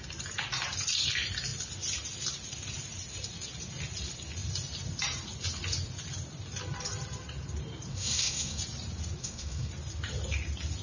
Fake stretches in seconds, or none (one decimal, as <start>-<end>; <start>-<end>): 7.9-8.6; 9.2-9.7